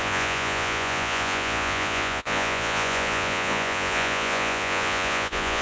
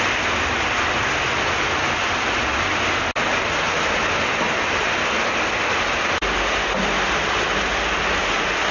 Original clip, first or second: second